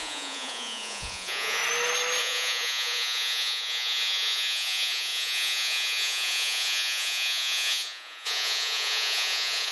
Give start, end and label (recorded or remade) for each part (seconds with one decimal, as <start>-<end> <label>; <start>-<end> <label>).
0.0-1.6 remade; 1.6-2.2 recorded; 2.2-9.7 remade